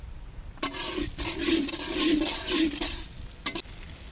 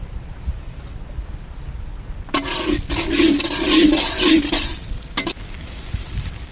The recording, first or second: second